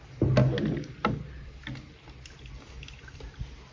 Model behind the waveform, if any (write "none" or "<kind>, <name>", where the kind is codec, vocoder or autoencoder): none